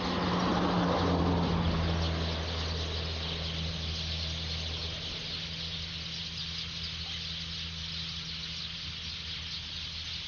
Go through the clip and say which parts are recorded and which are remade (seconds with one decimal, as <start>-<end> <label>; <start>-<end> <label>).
0.0-10.3 recorded